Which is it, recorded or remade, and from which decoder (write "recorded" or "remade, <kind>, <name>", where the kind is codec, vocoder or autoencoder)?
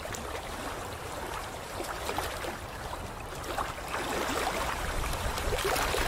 remade, vocoder, BigVGAN v2